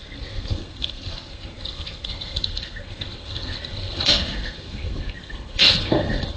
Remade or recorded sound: remade